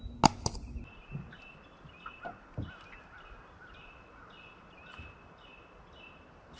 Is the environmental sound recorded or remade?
recorded